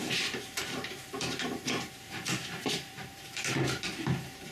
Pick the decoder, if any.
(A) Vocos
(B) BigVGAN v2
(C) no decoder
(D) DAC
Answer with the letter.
B